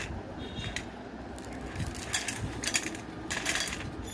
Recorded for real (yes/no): yes